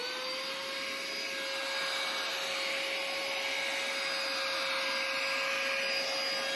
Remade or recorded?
recorded